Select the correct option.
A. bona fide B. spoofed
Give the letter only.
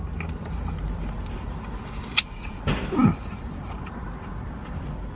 A